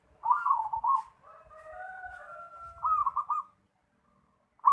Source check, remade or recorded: recorded